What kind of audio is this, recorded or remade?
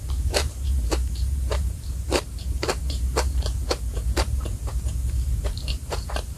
remade